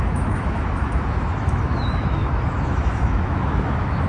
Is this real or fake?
fake